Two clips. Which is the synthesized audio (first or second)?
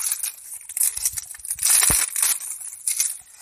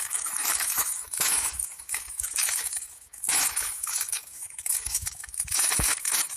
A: second